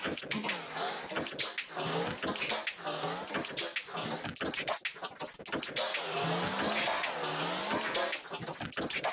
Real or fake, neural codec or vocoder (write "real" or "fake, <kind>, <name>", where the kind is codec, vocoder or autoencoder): real